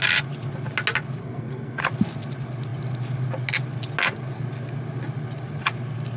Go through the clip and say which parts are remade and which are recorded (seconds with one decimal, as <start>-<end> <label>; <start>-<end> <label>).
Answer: 0.0-1.2 recorded; 1.2-1.8 remade; 1.8-6.2 recorded